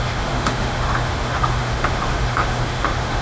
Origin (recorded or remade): remade